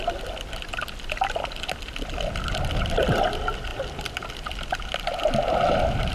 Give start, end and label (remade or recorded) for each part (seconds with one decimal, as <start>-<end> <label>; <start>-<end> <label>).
0.0-6.1 recorded